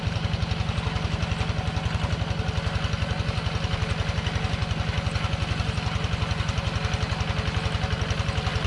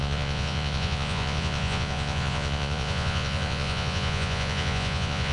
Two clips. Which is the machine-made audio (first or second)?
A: second